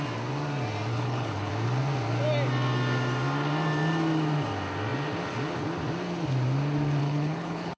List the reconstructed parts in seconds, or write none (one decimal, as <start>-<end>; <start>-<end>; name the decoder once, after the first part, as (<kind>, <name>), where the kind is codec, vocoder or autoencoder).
0.9-1.5 (codec, HILCodec); 7.0-7.8